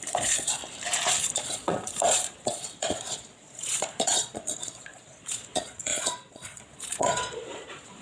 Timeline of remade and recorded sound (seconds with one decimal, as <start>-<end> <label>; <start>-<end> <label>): 0.0-0.6 remade; 0.6-1.2 recorded; 1.2-8.0 remade